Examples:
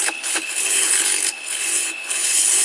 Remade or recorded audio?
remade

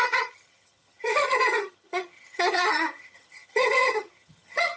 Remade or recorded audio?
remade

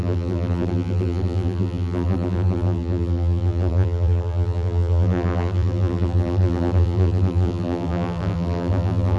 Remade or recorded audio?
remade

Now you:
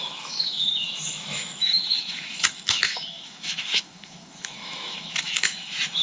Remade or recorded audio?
remade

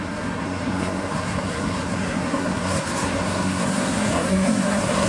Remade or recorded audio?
remade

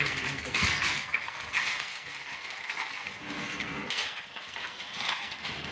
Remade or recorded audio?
remade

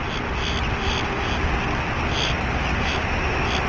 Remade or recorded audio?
recorded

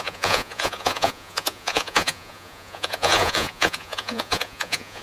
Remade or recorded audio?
remade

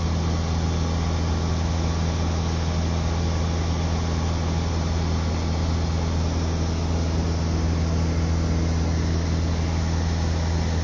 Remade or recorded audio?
recorded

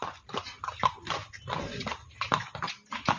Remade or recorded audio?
recorded